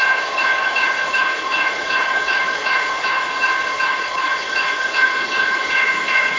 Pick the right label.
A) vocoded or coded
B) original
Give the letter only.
A